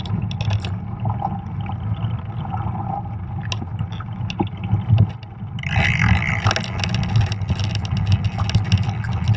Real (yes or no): yes